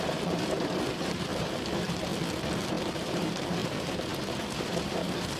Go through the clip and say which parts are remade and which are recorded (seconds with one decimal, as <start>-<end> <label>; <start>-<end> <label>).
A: 0.0-2.1 remade; 2.1-2.8 recorded; 2.8-5.4 remade

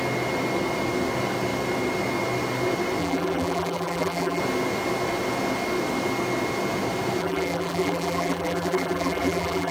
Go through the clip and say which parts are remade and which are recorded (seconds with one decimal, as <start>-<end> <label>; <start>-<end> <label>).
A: 0.0-3.0 recorded; 3.0-4.4 remade; 4.4-7.2 recorded; 7.2-9.7 remade

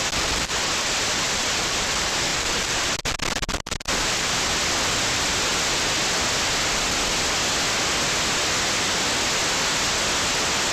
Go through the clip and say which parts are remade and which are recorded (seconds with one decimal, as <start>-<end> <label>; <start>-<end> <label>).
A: 0.0-10.7 recorded

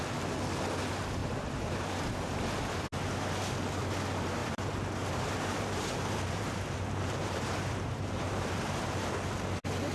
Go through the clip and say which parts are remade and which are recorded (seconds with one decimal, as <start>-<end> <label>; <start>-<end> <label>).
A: 0.0-1.2 recorded; 1.2-2.4 remade; 2.4-4.4 recorded; 4.4-9.1 remade; 9.1-9.9 recorded